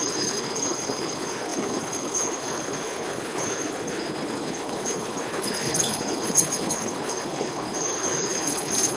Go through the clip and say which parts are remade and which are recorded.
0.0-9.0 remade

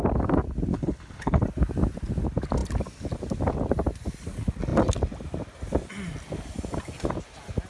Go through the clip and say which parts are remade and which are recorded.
0.0-0.7 recorded; 0.7-1.4 remade; 1.4-7.7 recorded

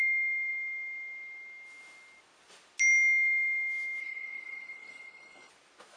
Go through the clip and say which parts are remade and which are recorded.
0.0-4.0 recorded; 4.0-5.5 remade; 5.5-6.0 recorded

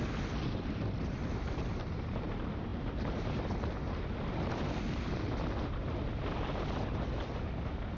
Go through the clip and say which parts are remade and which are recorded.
0.0-8.0 recorded